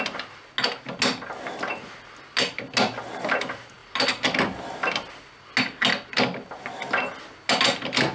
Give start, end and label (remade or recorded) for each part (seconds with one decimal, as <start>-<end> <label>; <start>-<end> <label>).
0.0-8.1 recorded